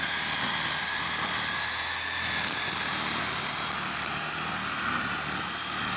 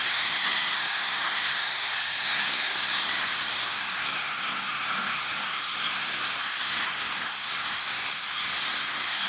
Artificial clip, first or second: second